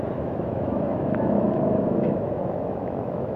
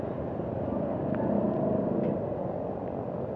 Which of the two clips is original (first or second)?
second